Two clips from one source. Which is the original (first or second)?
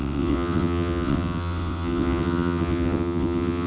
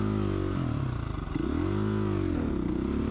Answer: second